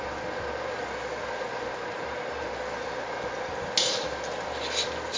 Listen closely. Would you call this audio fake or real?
real